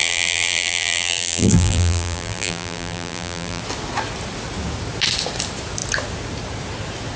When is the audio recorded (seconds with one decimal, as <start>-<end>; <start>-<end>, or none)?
3.6-7.2